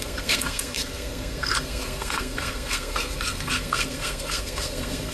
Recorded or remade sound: remade